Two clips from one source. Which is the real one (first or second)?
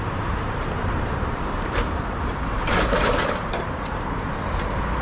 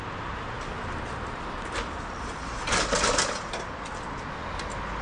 second